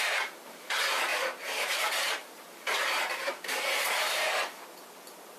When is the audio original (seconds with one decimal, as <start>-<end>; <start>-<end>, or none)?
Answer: 0.0-1.1; 4.3-5.4